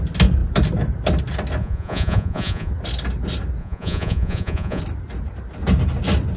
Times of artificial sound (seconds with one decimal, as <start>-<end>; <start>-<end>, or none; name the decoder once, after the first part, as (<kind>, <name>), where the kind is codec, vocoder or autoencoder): 1.6-2.7 (vocoder, Vocos); 3.6-4.8